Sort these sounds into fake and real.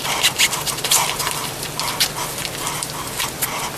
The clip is real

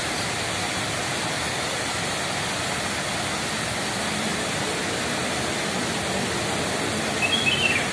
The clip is real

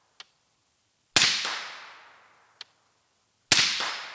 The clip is real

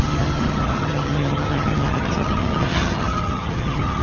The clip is fake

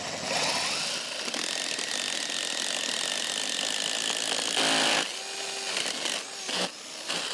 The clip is real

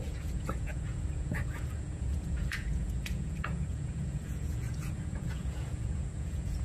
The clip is fake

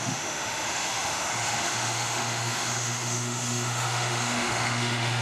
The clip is fake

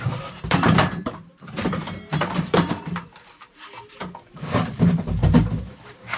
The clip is fake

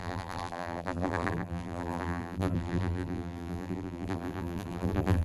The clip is fake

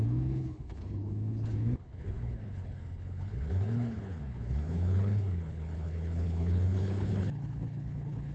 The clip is fake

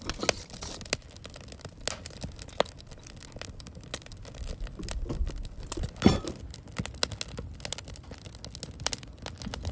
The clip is real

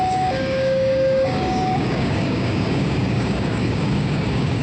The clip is fake